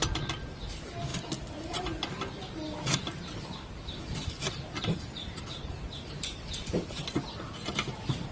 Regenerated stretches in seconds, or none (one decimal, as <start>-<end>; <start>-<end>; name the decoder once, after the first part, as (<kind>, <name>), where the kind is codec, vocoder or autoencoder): none